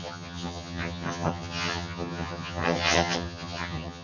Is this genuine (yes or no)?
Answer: no